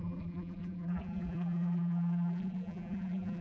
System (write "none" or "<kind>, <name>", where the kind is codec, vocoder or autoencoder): vocoder, BigVGAN v2